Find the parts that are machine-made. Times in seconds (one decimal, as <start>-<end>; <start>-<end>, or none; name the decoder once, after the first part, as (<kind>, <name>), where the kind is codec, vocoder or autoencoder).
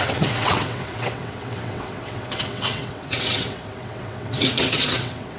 0.0-5.4 (vocoder, WaveNeXt)